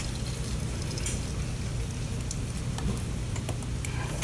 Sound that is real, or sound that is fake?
real